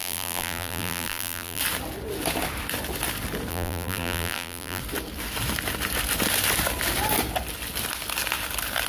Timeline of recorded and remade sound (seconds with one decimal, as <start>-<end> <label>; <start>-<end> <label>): 0.0-1.6 remade; 1.6-3.5 recorded; 3.5-4.8 remade; 4.8-8.9 recorded